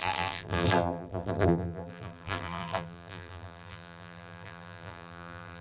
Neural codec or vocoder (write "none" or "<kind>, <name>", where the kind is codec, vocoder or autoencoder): vocoder, BigVGAN v2